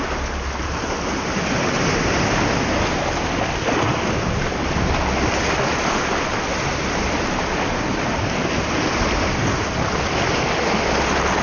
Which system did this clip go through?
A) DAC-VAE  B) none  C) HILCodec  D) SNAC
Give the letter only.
B